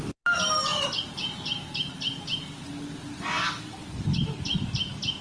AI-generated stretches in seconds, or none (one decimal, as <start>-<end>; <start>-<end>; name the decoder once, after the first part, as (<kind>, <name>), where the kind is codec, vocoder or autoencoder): none